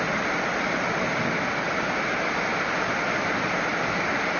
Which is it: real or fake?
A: fake